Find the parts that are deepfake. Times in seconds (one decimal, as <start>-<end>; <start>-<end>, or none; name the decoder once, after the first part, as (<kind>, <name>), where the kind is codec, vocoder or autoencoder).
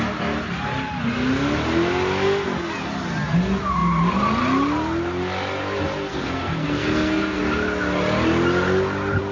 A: 6.1-7.4 (codec, SNAC)